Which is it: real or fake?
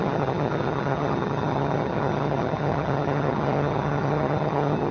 fake